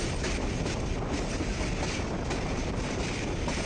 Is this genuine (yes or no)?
yes